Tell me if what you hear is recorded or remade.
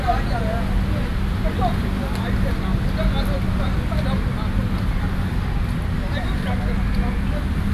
recorded